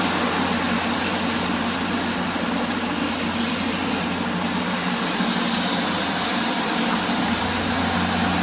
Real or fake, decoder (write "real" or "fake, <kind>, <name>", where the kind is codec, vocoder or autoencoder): real